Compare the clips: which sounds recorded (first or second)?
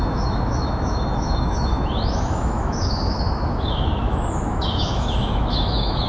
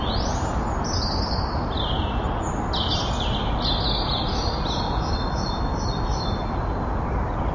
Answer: second